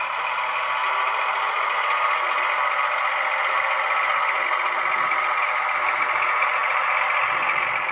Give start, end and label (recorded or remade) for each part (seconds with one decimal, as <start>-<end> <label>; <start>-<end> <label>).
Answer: 0.0-7.9 recorded